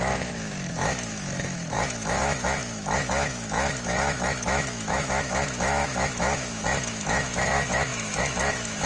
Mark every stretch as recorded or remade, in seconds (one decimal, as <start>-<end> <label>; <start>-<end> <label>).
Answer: 0.0-8.9 remade